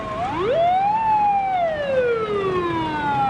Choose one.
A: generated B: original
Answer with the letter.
B